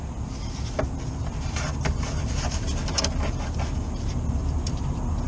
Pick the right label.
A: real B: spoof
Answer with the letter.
A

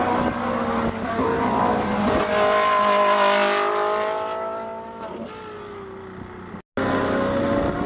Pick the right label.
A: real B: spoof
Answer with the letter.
A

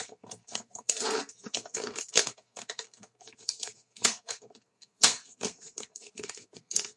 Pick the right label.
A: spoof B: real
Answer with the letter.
A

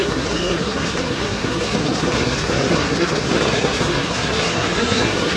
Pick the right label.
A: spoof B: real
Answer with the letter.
A